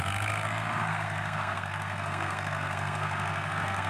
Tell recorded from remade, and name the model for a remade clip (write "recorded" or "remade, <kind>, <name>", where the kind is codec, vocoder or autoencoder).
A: remade, codec, SNAC